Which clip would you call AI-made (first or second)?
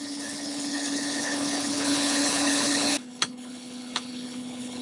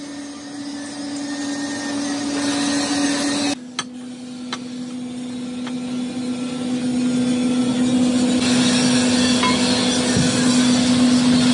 first